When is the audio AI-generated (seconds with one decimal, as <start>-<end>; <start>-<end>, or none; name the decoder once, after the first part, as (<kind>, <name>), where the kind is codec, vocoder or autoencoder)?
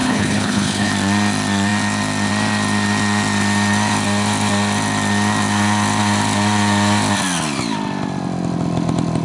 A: 0.0-0.9 (codec, HILCodec)